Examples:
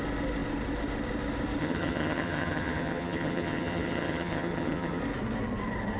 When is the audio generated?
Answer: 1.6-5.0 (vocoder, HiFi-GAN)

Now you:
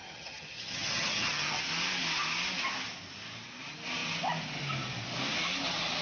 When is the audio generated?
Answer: 0.0-1.6 (vocoder, HiFi-GAN)